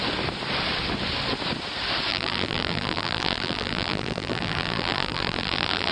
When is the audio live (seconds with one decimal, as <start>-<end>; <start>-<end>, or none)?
0.0-2.1